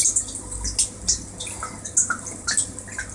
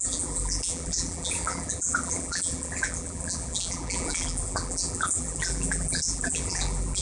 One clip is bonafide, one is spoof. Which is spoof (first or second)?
second